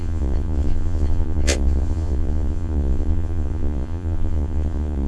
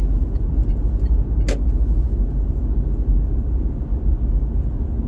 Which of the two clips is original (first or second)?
second